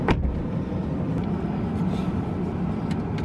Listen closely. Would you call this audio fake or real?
real